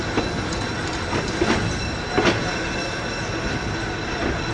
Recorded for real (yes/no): yes